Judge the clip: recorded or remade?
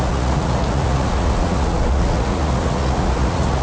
remade